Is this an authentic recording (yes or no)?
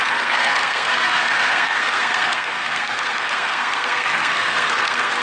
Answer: no